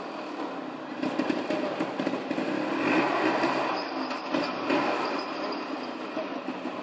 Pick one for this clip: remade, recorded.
recorded